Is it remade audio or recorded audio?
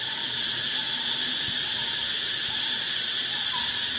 remade